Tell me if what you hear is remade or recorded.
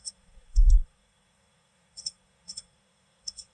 remade